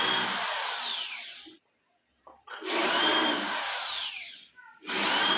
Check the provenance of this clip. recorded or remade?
recorded